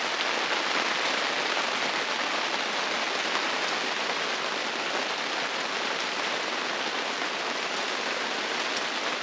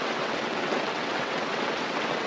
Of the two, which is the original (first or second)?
first